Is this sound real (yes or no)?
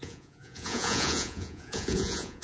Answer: no